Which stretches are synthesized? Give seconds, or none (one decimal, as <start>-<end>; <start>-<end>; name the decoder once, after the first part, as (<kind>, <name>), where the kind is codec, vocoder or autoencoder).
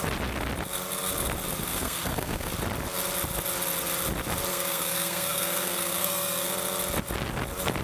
1.7-2.5 (codec, SNAC); 4.5-6.5